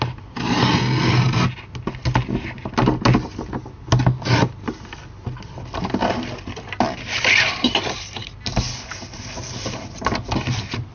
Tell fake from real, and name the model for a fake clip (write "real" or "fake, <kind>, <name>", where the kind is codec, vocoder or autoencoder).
real